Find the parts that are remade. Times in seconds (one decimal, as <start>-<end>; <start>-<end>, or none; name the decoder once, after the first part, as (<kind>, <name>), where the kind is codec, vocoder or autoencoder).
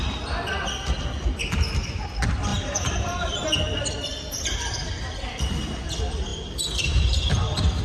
2.5-3.5 (vocoder, BigVGAN v2)